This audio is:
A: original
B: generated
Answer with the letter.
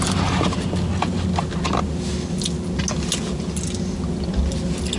A